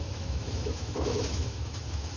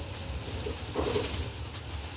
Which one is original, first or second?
second